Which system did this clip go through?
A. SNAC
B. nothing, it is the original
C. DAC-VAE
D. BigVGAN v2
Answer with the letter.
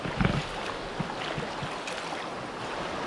B